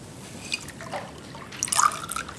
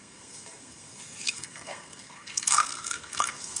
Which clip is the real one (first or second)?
first